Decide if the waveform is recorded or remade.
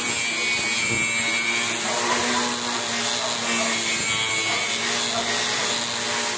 recorded